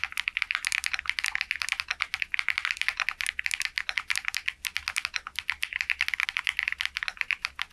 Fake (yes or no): no